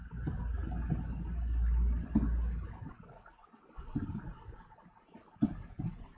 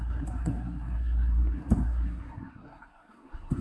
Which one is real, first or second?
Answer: first